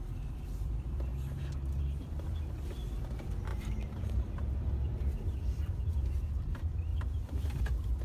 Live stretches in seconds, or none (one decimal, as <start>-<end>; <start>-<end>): 1.1-1.8